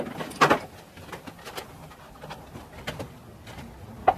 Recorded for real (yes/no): yes